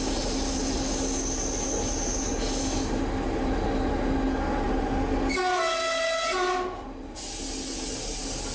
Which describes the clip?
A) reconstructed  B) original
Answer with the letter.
B